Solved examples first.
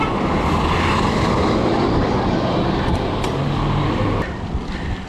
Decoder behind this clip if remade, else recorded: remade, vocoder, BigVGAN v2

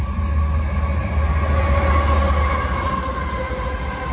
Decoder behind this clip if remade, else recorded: recorded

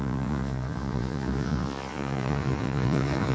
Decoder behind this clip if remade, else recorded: remade, vocoder, Vocos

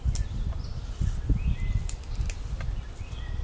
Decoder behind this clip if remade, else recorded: recorded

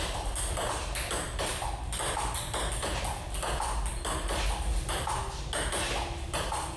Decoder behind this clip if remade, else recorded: recorded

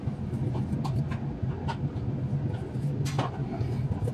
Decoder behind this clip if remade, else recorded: recorded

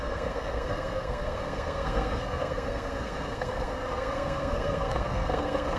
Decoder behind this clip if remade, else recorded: remade, codec, SNAC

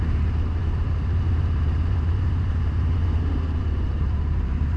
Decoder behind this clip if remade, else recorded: remade, vocoder, BigVGAN v2